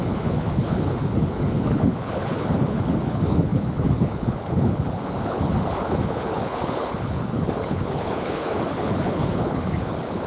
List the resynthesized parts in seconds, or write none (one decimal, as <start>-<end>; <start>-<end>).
0.0-10.3